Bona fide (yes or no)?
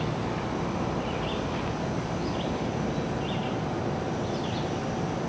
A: yes